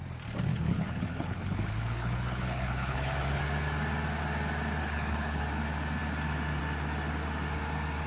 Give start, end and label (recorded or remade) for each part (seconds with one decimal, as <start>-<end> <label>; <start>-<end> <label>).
0.0-0.5 recorded; 0.5-3.4 remade; 3.4-4.8 recorded; 4.8-5.4 remade; 5.4-8.1 recorded